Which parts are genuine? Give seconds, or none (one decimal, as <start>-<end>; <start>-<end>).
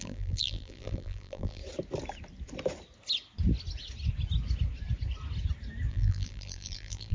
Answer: 1.6-5.9